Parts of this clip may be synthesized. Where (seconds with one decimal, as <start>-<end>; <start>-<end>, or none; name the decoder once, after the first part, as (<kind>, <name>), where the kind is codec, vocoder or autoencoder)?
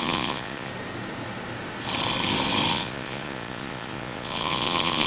0.0-0.7 (vocoder, Vocos); 2.7-5.1